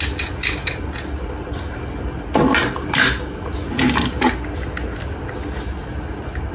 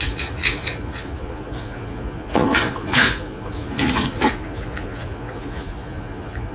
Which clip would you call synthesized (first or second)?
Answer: second